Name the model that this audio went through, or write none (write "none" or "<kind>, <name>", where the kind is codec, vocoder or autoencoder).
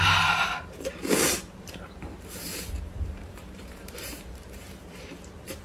vocoder, BigVGAN v2